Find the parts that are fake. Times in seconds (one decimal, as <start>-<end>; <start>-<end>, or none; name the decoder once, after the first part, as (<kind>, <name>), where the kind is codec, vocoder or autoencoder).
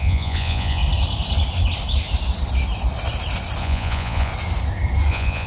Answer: 0.0-0.8 (vocoder, Vocos); 3.6-4.3; 5.1-5.5